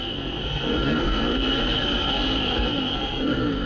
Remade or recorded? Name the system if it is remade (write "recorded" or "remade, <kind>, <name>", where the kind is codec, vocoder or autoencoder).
remade, codec, SNAC